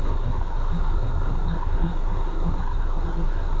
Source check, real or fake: fake